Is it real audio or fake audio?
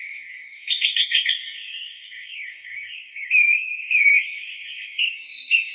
fake